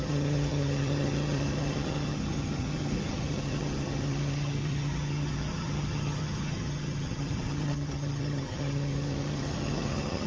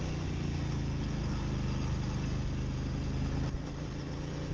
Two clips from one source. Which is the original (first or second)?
second